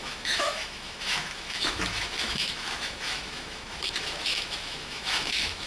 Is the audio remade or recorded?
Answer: remade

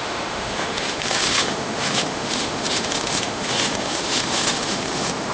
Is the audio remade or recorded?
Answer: remade